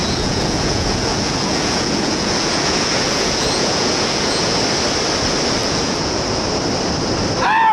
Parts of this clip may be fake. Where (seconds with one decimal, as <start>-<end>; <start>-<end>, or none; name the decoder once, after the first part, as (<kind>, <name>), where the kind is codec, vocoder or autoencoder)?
0.0-4.6 (vocoder, Vocos); 5.6-6.4